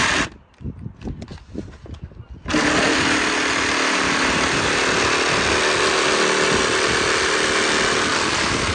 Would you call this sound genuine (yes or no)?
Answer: yes